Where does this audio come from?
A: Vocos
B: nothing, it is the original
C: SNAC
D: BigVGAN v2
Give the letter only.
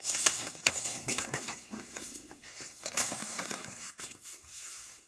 C